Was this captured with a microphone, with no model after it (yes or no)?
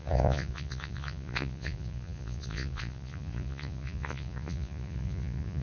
no